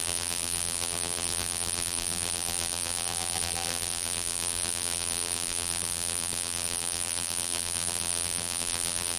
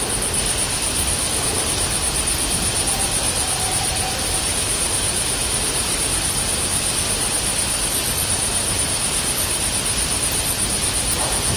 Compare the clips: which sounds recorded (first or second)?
second